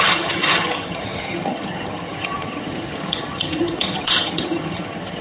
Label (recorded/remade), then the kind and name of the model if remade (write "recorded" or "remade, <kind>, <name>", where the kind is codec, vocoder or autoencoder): remade, vocoder, HiFi-GAN